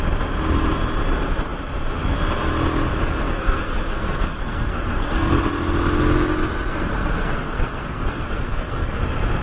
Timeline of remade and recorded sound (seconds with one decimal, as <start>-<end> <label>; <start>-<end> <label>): 0.0-3.2 recorded; 3.2-5.4 remade; 5.4-6.7 recorded; 6.7-9.0 remade; 9.0-9.4 recorded